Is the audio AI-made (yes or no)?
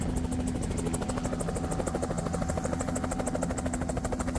no